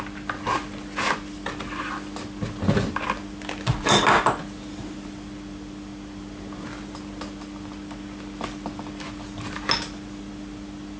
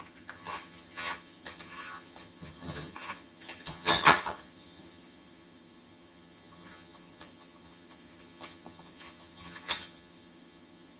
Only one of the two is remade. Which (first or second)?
second